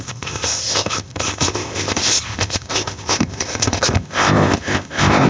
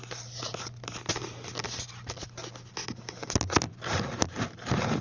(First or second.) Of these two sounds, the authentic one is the second